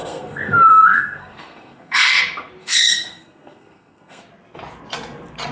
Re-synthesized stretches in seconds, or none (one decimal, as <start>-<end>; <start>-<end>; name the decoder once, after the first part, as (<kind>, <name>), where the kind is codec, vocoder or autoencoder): 0.0-2.2 (codec, SNAC); 2.6-4.2